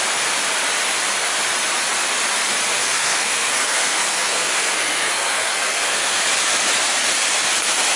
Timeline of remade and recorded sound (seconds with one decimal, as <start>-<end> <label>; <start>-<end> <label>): 0.0-2.8 recorded; 2.8-6.2 remade; 6.2-8.0 recorded